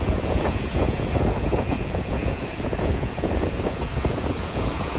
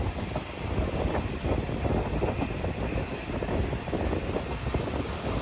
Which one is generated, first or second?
first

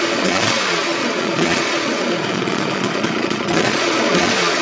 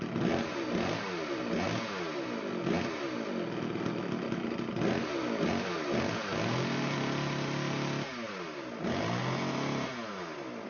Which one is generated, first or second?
first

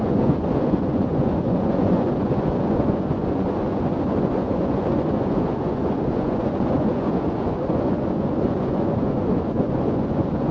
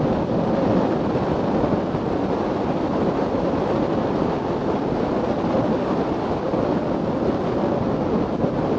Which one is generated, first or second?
first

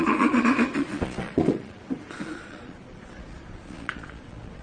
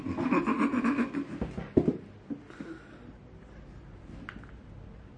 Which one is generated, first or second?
first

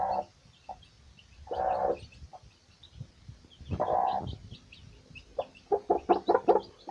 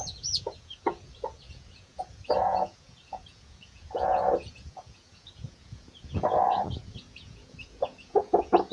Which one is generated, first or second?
second